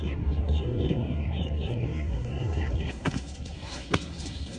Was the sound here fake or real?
fake